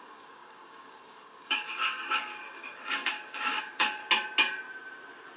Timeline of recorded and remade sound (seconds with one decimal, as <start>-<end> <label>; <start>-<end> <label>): 0.0-4.0 remade; 4.0-5.4 recorded